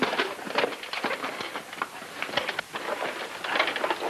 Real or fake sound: real